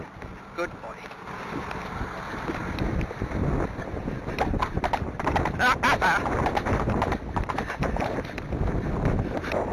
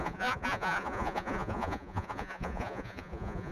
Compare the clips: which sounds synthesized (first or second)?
second